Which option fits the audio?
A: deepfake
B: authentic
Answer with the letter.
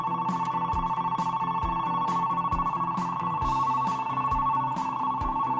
B